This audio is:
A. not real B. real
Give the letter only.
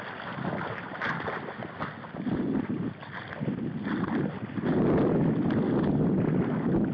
B